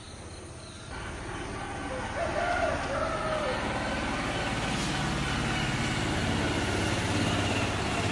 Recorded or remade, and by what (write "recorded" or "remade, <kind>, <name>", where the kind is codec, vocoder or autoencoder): recorded